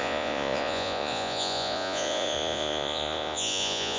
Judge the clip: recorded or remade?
remade